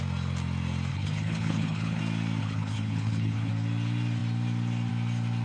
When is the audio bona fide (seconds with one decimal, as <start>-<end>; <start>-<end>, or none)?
0.0-0.9; 2.0-2.4; 3.5-5.4